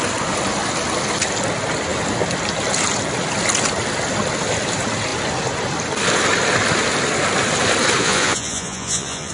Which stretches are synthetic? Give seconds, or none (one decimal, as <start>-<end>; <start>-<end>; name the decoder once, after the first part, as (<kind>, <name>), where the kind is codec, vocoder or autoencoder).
8.0-9.3 (vocoder, Vocos)